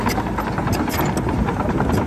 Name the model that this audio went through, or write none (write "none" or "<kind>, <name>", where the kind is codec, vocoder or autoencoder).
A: none